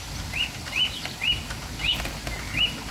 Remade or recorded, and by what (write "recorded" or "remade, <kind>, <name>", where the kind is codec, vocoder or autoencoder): recorded